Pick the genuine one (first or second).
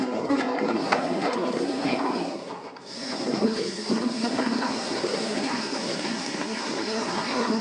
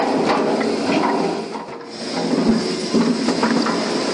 second